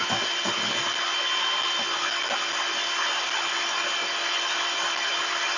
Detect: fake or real real